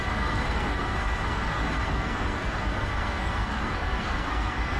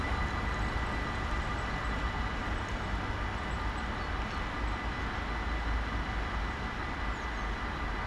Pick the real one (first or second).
second